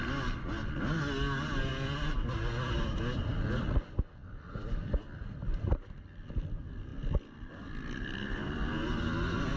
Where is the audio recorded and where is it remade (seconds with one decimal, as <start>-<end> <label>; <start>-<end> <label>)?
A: 0.0-9.6 recorded